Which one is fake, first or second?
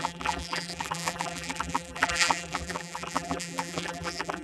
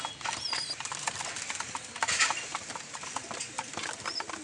first